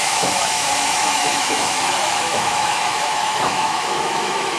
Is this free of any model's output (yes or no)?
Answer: no